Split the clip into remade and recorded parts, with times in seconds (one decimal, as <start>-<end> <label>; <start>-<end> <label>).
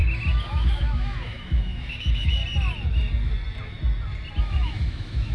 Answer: 0.0-0.5 recorded; 0.5-2.4 remade; 2.4-4.4 recorded; 4.4-5.3 remade